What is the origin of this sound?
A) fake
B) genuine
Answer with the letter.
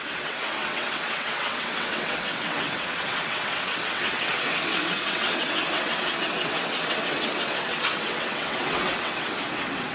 A